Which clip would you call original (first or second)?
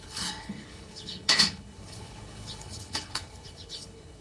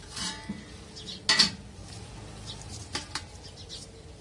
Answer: second